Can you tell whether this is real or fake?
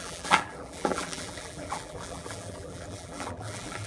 fake